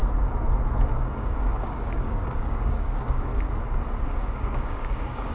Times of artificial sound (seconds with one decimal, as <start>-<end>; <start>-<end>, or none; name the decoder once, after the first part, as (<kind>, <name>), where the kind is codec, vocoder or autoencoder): 0.9-3.3 (codec, DAC); 4.2-5.3